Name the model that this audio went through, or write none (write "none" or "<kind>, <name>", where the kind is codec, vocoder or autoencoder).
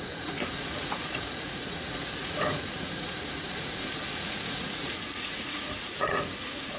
vocoder, Vocos